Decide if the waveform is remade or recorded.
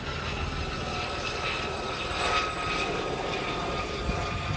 recorded